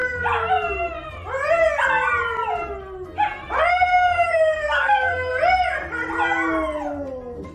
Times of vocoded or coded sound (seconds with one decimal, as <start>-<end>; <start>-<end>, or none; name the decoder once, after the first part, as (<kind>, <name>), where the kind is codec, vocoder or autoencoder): 3.7-5.3 (codec, SNAC)